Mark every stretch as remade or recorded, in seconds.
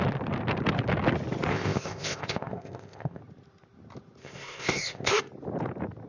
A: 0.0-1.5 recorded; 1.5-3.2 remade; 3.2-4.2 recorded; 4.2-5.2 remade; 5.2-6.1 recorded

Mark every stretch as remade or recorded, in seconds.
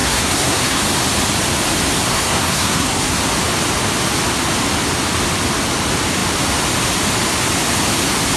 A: 0.0-0.8 remade; 0.8-2.1 recorded; 2.1-3.2 remade; 3.2-8.4 recorded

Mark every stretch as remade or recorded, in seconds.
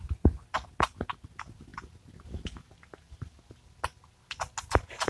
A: 0.0-5.1 recorded